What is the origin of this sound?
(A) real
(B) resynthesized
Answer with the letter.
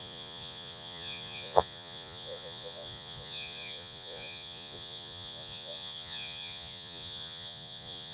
B